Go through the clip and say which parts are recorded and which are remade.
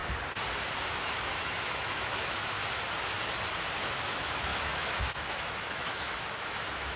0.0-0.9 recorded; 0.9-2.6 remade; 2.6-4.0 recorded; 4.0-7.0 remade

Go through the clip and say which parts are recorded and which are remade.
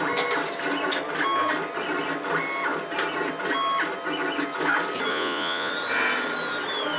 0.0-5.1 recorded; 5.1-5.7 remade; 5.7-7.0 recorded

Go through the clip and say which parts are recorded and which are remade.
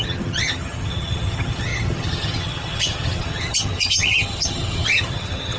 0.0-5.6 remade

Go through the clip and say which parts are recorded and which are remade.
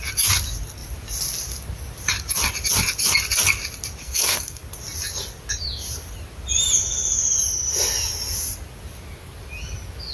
0.0-4.0 recorded; 4.0-4.6 remade; 4.6-10.1 recorded